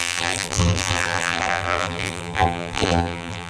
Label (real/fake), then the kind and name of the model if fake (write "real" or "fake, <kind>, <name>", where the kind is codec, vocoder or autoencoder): fake, vocoder, BigVGAN v2